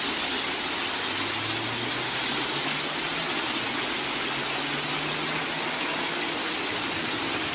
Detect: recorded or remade recorded